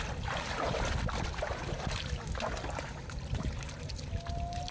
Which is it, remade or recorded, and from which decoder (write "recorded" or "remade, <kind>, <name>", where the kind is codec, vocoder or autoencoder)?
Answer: recorded